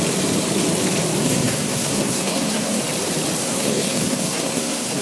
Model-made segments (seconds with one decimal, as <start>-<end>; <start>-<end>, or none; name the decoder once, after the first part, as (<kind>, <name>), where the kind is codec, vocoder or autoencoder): 1.2-2.8 (codec, SNAC); 3.4-5.0